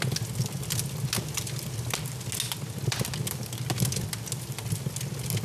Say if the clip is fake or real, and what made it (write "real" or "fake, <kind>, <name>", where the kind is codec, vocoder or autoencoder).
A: real